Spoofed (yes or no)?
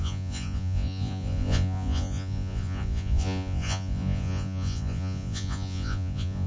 yes